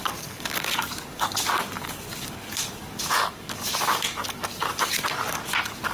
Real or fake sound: fake